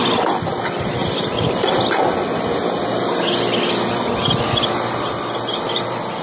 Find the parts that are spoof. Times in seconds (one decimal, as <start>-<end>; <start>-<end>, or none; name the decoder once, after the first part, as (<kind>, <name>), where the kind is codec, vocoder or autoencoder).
1.0-1.7 (vocoder, BigVGAN v2)